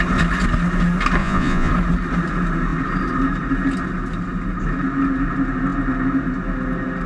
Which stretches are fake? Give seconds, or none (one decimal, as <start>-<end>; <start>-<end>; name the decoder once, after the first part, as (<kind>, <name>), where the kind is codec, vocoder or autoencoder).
1.2-1.7 (vocoder, Vocos)